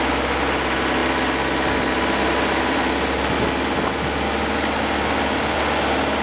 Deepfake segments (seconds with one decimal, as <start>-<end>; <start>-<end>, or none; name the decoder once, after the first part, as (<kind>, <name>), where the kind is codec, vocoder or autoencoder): none